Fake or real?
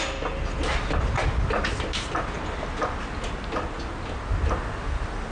real